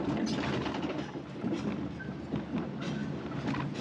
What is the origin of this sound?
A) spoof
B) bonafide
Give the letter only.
B